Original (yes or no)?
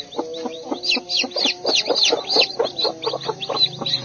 yes